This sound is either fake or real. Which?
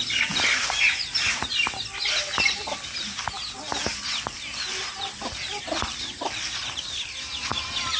real